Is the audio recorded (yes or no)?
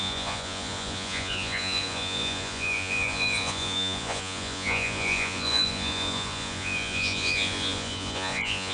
no